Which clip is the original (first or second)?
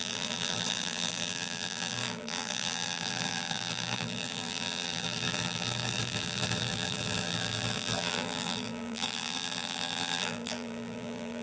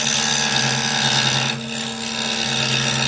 second